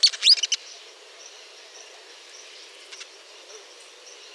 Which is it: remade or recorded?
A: recorded